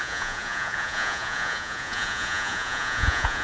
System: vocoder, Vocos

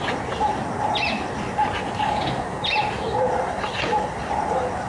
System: none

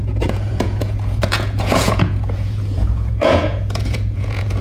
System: vocoder, Vocos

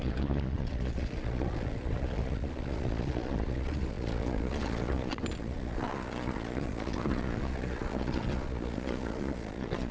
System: vocoder, Vocos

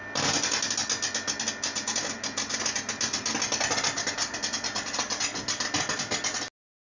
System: none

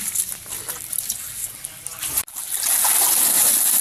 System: none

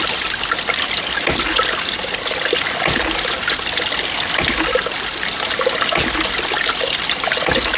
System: none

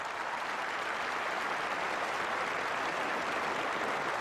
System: none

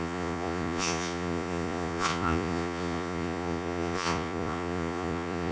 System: vocoder, Vocos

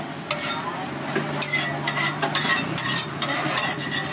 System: none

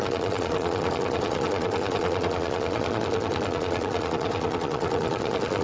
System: vocoder, Vocos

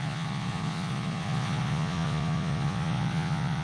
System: vocoder, Vocos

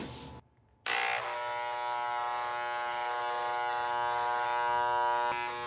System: none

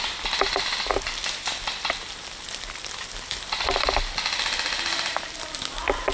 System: none